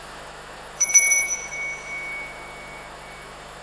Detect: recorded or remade remade